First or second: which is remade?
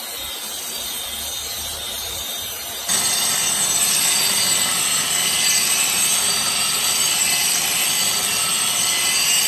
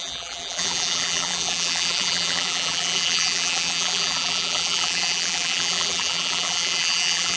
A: second